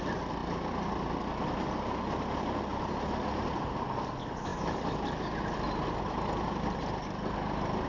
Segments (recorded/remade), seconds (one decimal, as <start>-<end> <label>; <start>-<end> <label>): 0.0-2.7 recorded; 2.7-4.1 remade; 4.1-7.9 recorded